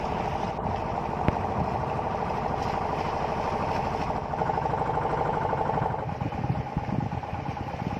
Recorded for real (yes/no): yes